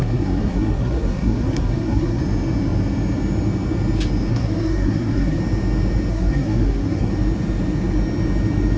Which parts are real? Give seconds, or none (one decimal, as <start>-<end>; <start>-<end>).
2.2-4.3; 5.4-6.1; 7.1-8.8